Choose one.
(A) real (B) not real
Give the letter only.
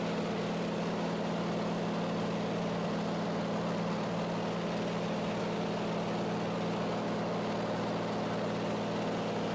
A